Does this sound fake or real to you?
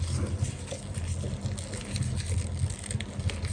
real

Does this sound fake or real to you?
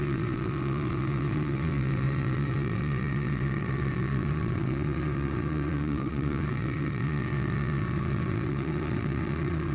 fake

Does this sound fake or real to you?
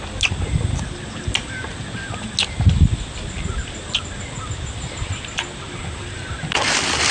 real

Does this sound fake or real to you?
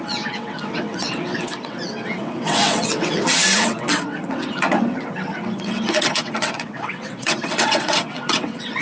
fake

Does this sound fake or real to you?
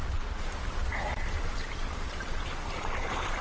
real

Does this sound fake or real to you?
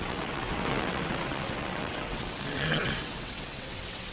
fake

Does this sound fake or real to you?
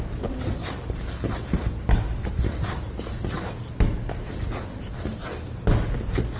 real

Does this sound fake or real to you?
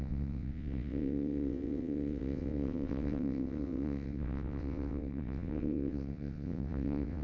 fake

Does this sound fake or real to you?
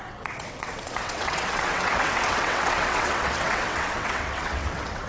fake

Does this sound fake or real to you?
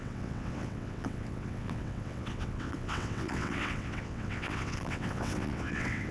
fake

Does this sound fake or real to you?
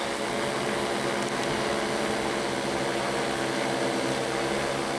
real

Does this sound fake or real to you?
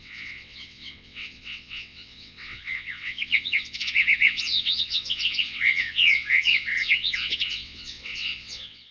fake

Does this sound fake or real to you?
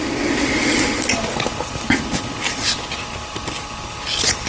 real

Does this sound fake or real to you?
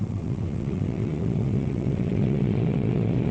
fake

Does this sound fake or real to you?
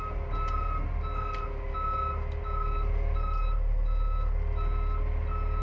real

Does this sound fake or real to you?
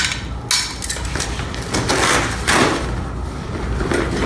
real